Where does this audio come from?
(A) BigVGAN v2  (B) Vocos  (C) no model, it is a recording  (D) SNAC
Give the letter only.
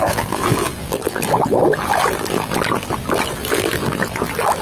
A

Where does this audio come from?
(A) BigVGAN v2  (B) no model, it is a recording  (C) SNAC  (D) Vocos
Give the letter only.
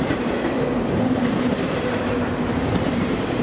A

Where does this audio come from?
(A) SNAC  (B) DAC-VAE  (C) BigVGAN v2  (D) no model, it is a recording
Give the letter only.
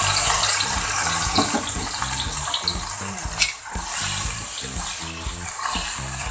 D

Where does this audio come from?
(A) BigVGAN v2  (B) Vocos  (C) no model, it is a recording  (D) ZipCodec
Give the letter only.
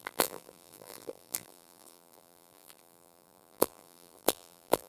A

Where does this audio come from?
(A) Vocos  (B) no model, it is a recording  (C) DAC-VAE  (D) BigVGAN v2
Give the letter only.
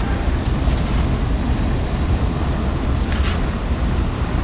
B